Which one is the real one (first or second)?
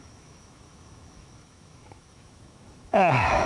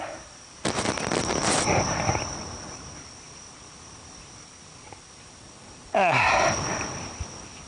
second